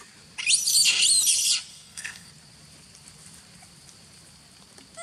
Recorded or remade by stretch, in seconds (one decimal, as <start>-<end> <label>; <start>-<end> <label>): 0.0-1.7 recorded; 1.7-2.3 remade; 2.3-5.0 recorded